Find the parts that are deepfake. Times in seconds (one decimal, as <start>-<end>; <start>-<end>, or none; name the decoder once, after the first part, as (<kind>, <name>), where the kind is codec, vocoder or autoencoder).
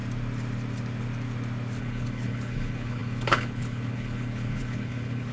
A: 1.8-5.3 (codec, HILCodec)